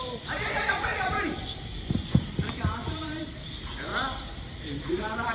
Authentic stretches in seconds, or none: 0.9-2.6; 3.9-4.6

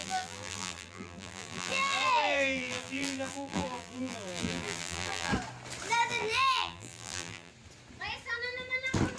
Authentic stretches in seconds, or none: 5.3-6.1; 7.5-9.2

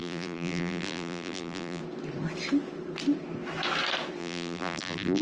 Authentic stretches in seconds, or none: 1.8-4.2